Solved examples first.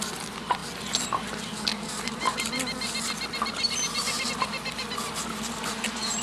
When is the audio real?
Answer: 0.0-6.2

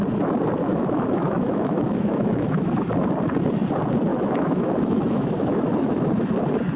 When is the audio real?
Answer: 0.0-0.7; 2.9-4.1; 6.1-6.8

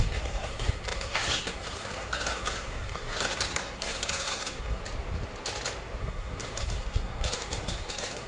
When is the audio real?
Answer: 4.8-6.0

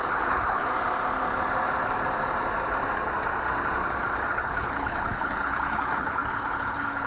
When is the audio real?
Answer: 0.7-4.3